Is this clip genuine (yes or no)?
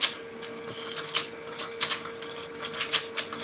yes